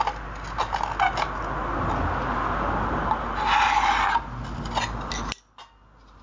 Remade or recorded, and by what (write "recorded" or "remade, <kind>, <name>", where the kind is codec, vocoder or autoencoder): recorded